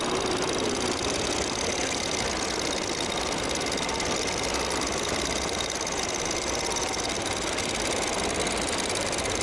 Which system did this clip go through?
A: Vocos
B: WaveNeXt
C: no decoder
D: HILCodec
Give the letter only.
C